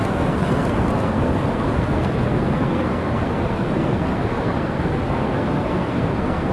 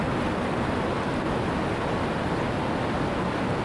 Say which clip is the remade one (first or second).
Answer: first